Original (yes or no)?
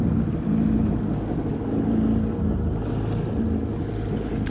yes